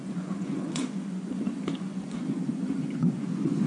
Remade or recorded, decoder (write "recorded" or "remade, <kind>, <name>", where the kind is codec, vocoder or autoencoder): remade, vocoder, Vocos